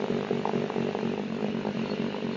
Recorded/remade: recorded